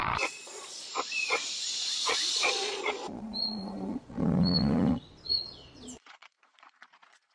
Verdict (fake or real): fake